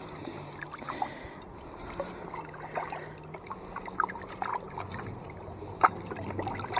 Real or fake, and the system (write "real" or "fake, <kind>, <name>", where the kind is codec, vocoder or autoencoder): real